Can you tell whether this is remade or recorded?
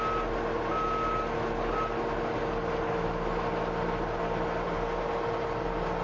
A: recorded